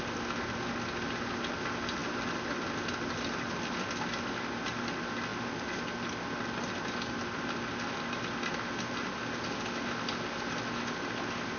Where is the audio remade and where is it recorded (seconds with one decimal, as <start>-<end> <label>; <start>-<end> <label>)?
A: 0.0-11.6 recorded